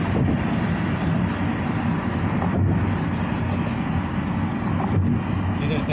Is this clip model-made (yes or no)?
no